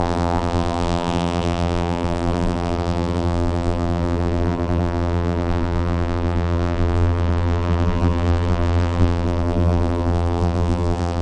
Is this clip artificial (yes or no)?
yes